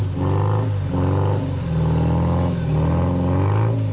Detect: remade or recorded recorded